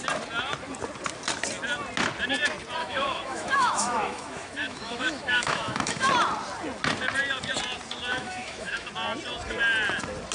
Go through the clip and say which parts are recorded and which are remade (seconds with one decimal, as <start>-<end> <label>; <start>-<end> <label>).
0.0-2.8 recorded; 2.8-6.1 remade; 6.1-8.1 recorded; 8.1-8.9 remade; 8.9-10.3 recorded